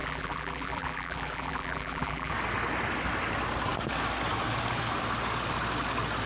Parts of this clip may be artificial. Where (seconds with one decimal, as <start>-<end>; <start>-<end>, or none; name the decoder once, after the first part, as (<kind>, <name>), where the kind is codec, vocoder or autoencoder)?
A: 0.0-2.3 (vocoder, BigVGAN v2)